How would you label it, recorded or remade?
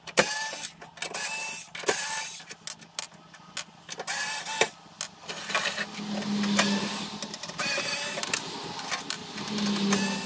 recorded